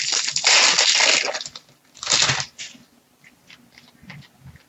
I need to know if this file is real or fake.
real